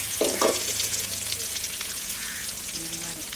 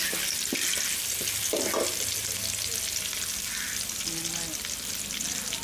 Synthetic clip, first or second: first